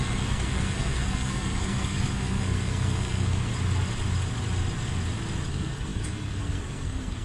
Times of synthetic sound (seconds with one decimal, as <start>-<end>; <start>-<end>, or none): 0.0-3.5; 5.5-7.2